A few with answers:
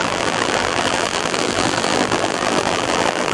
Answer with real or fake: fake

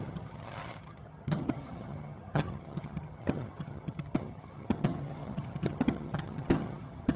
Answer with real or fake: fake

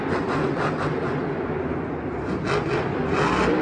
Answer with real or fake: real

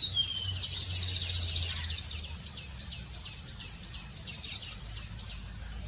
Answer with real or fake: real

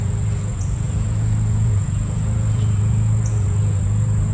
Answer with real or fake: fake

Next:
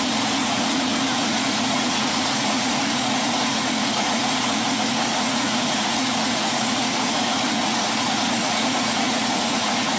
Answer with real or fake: fake